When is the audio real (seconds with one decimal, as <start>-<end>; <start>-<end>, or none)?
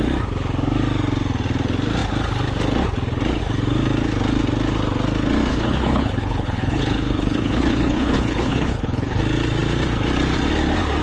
0.0-5.5; 9.2-11.0